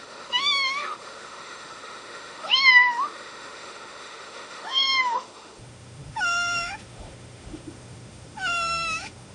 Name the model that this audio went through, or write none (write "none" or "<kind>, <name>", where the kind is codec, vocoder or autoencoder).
autoencoder, DAC-VAE